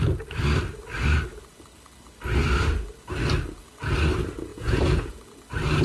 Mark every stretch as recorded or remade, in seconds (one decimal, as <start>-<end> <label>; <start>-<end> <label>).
0.0-4.5 recorded; 4.5-5.2 remade; 5.2-5.8 recorded